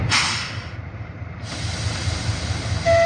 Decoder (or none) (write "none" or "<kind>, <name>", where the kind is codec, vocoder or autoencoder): none